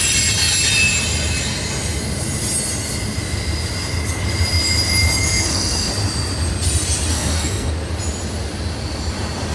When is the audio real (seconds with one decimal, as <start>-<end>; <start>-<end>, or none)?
0.0-5.2; 5.9-7.1; 7.7-9.5